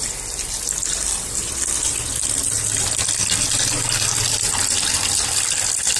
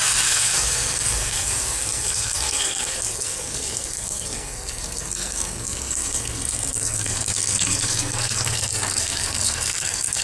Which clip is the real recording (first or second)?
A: first